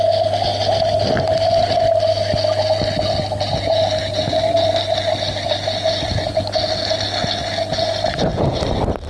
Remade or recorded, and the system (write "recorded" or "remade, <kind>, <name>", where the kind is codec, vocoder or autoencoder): recorded